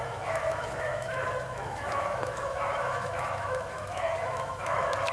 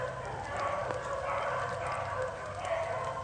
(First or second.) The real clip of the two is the second